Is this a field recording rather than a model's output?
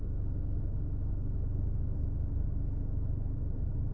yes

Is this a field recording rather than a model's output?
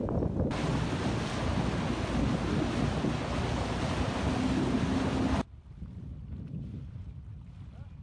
yes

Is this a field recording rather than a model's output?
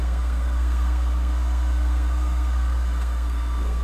no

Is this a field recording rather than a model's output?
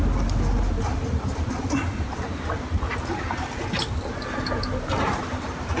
yes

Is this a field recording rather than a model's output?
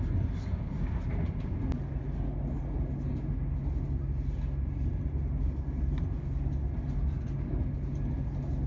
yes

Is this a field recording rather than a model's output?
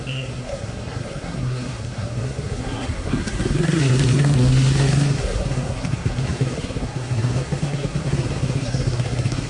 no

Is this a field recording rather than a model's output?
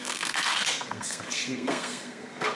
no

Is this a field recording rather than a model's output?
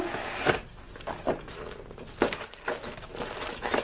yes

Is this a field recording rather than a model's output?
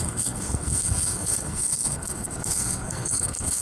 no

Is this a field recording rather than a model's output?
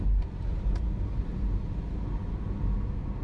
yes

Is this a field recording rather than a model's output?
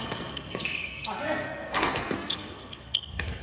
no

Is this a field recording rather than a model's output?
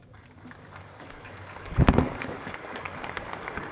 no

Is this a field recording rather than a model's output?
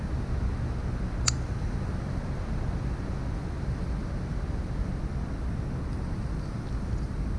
yes